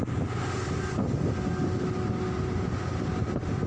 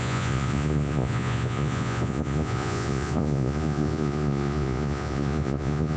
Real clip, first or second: first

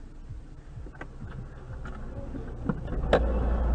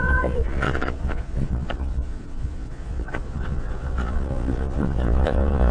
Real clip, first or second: first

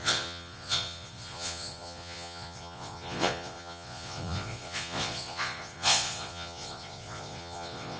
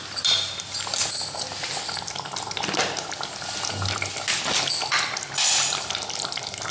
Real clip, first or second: second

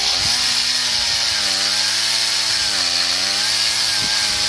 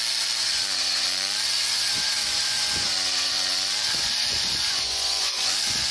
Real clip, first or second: first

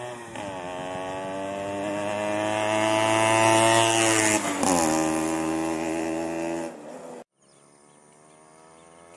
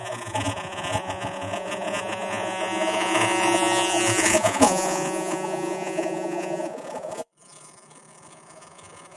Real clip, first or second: first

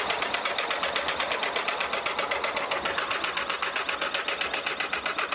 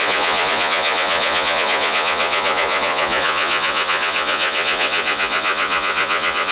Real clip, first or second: first